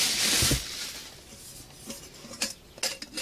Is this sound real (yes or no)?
yes